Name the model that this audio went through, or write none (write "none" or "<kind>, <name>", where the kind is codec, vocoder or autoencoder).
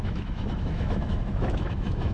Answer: autoencoder, DAC-VAE